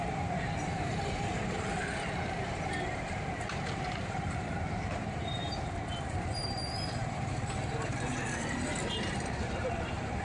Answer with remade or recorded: remade